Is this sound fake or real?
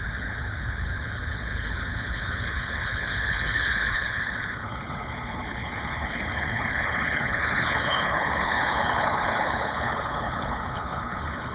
fake